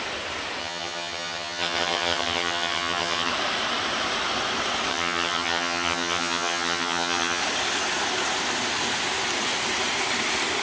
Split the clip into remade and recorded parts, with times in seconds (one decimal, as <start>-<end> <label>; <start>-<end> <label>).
0.0-0.6 recorded; 0.6-3.3 remade; 3.3-4.9 recorded; 4.9-7.4 remade; 7.4-10.6 recorded